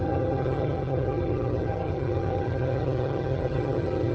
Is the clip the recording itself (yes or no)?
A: no